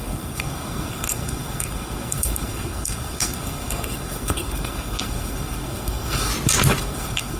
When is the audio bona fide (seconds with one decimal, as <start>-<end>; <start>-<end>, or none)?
6.3-6.8